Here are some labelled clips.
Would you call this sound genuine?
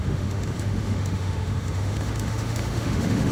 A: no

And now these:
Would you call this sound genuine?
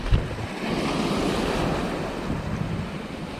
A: yes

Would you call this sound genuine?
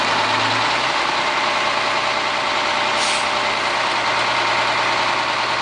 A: yes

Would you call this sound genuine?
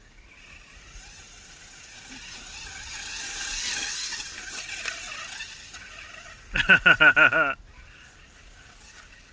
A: yes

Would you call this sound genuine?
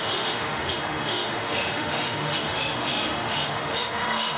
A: no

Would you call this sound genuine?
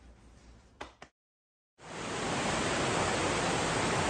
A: yes